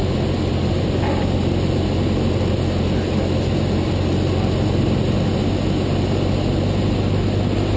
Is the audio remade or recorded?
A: recorded